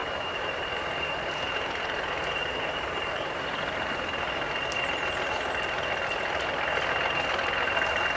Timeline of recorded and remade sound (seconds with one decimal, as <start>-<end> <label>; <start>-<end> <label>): 0.0-3.9 remade; 3.9-8.2 recorded